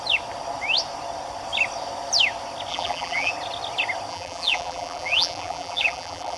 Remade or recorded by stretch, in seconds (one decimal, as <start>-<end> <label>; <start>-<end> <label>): 0.0-2.7 recorded; 2.7-3.3 remade; 3.3-4.1 recorded; 4.1-6.4 remade